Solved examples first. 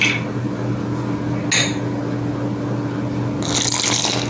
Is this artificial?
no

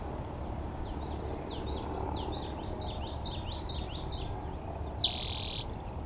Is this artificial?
no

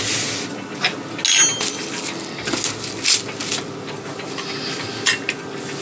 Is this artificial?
no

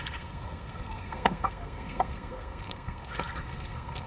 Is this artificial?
yes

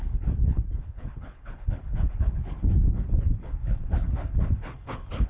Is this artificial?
yes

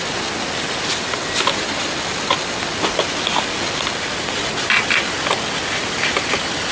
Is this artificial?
no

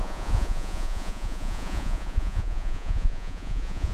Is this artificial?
yes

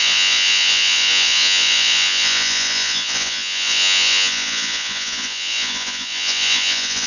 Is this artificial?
yes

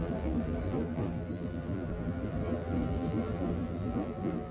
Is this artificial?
yes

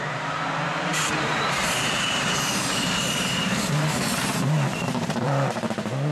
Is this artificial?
yes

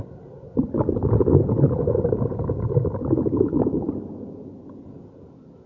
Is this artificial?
no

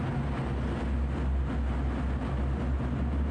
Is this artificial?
no